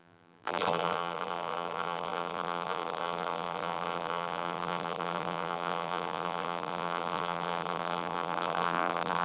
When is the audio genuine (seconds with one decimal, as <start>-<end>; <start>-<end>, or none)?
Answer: none